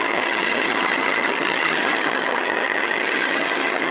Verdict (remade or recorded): remade